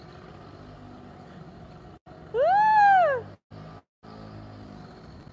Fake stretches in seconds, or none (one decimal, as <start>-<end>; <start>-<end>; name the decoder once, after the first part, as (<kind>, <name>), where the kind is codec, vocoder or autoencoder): none